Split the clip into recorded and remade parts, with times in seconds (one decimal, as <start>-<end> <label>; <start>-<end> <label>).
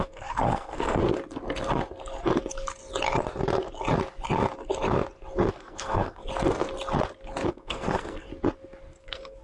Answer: 0.0-1.0 remade; 1.0-5.5 recorded; 5.5-6.3 remade; 6.3-7.5 recorded; 7.5-8.3 remade; 8.3-9.0 recorded; 9.0-9.4 remade